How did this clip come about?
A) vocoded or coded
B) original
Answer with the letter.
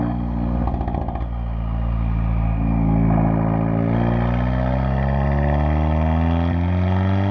B